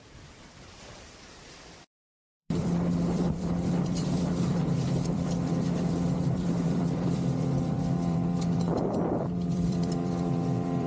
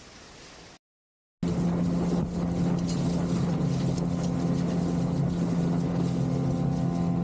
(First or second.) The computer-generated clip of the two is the first